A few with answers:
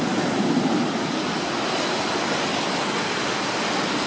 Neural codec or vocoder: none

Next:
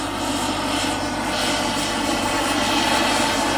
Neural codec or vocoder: none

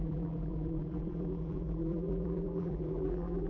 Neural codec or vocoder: vocoder, BigVGAN v2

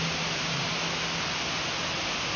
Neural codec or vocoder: none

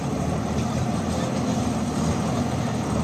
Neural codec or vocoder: vocoder, BigVGAN v2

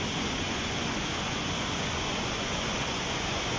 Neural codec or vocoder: vocoder, Vocos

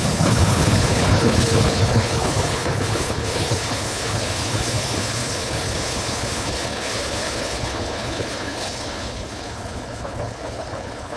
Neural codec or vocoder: codec, HILCodec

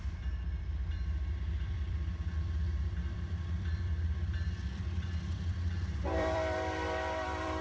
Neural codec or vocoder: vocoder, BigVGAN v2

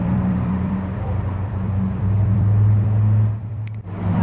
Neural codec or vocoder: vocoder, BigVGAN v2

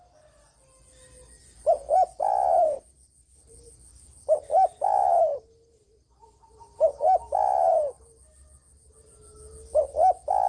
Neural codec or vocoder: none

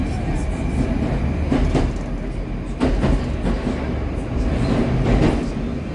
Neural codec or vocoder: none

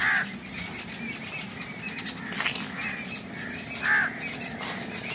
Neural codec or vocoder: none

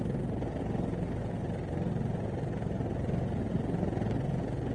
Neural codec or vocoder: none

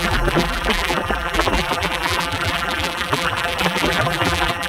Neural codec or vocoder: vocoder, BigVGAN v2